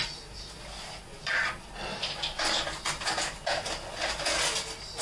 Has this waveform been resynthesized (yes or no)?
no